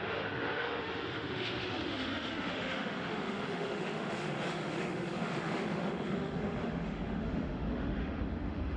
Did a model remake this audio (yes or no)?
yes